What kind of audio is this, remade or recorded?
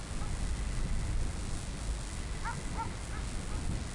recorded